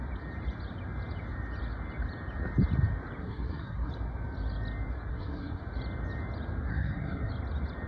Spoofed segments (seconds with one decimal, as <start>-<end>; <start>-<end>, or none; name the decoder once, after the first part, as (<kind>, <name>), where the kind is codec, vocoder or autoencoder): 3.2-3.9 (codec, SNAC); 5.1-5.6; 6.7-7.3

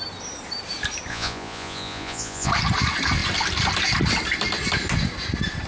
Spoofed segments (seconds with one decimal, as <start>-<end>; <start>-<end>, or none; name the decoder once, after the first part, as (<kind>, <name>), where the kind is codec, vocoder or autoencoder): 1.1-2.5 (vocoder, Vocos)

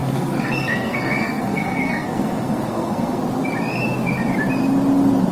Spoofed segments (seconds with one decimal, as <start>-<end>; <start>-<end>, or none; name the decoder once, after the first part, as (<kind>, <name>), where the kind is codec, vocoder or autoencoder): 0.0-3.2 (codec, SNAC)

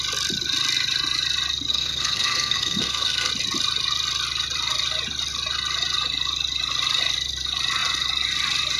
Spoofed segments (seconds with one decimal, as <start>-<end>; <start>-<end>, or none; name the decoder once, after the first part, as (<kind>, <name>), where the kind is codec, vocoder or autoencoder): 1.7-3.3 (codec, SNAC)

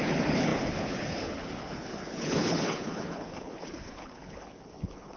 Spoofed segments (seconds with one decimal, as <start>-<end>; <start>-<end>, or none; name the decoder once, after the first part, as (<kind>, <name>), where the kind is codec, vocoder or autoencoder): 0.0-5.2 (codec, HILCodec)

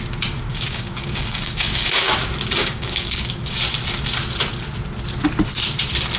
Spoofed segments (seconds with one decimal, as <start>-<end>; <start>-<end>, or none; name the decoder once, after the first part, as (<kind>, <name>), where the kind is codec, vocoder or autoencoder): 0.5-1.9 (codec, DAC); 2.6-3.6

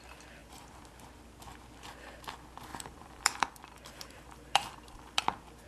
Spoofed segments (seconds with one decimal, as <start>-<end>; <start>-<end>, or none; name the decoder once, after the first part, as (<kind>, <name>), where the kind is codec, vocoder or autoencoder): 0.4-0.9 (vocoder, BigVGAN v2); 2.7-5.2